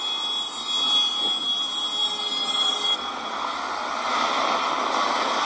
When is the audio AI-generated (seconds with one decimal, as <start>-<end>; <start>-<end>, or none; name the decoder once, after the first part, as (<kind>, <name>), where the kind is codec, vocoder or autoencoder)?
none